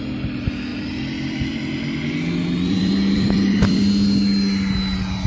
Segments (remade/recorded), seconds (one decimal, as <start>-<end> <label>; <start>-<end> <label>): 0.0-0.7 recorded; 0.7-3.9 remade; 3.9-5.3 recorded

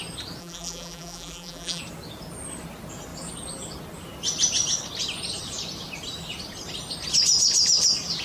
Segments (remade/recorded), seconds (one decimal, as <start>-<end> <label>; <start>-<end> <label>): 0.0-0.4 recorded; 0.4-1.8 remade; 1.8-8.2 recorded

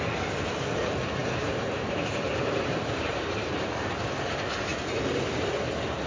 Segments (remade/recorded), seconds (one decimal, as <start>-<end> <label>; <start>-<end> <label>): 0.0-1.2 recorded; 1.2-4.0 remade; 4.0-4.7 recorded; 4.7-5.2 remade; 5.2-6.1 recorded

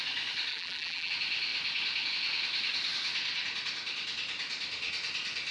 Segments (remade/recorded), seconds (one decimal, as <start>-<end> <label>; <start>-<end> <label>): 0.0-0.5 recorded; 0.5-1.1 remade; 1.1-5.5 recorded